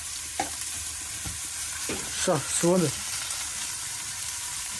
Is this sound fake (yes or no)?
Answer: yes